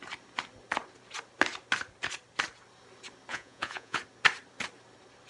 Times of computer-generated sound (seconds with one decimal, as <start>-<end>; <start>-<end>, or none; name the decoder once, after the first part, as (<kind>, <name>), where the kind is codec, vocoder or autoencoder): 3.3-4.0 (vocoder, Vocos)